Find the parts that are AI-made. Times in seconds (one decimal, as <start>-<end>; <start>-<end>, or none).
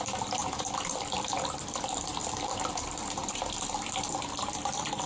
0.0-5.1